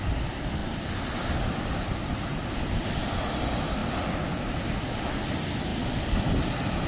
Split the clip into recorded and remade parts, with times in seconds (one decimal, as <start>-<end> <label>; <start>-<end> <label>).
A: 0.0-6.9 recorded